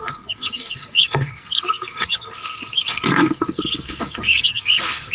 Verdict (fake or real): fake